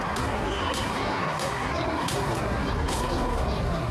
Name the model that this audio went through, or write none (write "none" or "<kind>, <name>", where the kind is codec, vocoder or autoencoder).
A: codec, SNAC